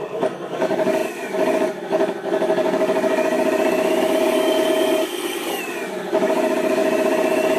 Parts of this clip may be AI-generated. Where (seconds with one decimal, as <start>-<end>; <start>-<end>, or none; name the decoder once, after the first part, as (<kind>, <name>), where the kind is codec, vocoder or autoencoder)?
0.0-7.6 (codec, DAC)